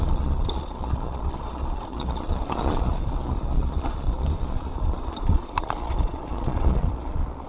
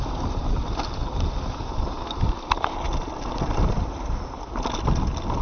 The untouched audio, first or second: second